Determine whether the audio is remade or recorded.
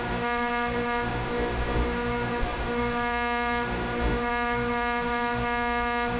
remade